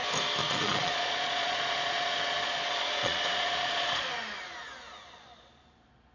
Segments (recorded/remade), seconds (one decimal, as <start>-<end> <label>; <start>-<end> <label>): 0.0-0.4 recorded; 0.4-4.1 remade; 4.1-6.1 recorded